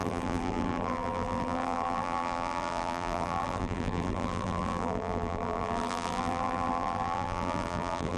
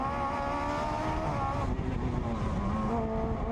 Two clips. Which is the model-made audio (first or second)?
first